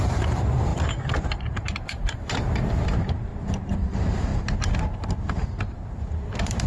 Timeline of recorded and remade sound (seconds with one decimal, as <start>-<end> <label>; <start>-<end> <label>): 0.0-0.7 remade; 0.7-1.4 recorded; 1.4-3.3 remade; 3.3-3.9 recorded; 3.9-4.3 remade; 4.3-5.4 recorded; 5.4-6.7 remade